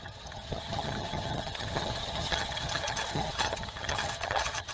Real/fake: fake